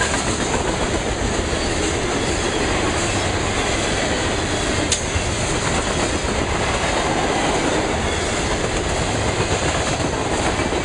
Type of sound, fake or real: real